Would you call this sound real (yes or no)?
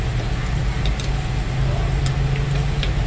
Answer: yes